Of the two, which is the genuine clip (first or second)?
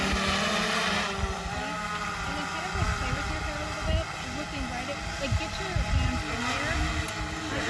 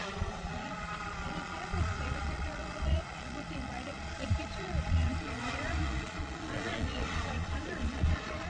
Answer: first